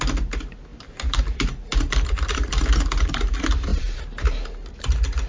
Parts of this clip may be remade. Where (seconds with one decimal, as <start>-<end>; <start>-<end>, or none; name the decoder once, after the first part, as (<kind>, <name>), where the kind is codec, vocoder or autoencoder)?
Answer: 0.7-3.2 (vocoder, BigVGAN v2); 3.7-4.7